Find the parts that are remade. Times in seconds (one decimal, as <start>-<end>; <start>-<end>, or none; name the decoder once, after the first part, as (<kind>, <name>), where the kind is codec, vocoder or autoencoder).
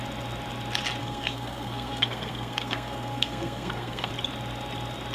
1.0-4.1 (codec, SNAC)